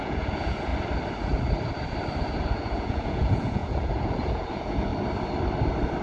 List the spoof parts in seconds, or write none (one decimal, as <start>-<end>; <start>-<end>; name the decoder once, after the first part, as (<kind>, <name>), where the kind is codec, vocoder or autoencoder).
0.0-0.7 (vocoder, Vocos); 2.3-4.9